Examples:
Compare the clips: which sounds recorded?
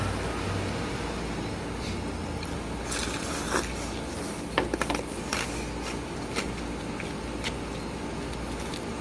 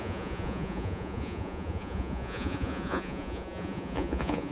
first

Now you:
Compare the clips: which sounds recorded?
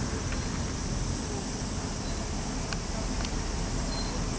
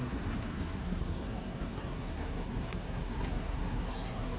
first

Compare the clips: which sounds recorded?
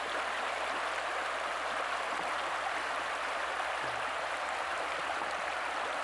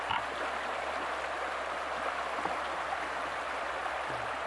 second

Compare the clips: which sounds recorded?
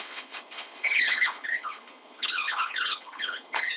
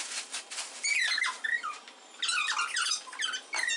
second